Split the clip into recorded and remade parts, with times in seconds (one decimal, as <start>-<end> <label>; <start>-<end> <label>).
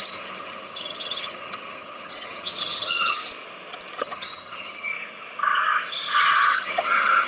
0.0-3.2 remade; 3.2-4.0 recorded; 4.0-4.9 remade; 4.9-6.5 recorded; 6.5-7.3 remade